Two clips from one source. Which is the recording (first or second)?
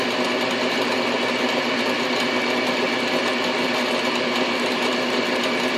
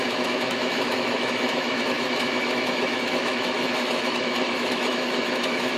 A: first